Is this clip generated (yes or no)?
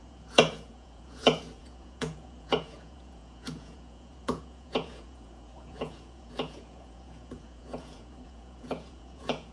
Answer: yes